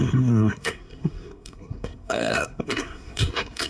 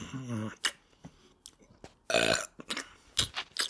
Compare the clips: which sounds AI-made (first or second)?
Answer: first